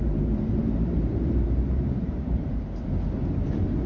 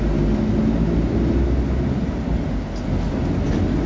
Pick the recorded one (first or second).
second